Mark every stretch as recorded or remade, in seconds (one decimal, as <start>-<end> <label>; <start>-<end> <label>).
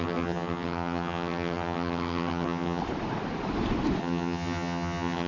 0.0-2.8 remade; 2.8-4.0 recorded; 4.0-5.3 remade